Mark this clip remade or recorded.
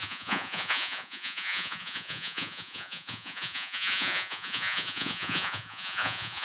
remade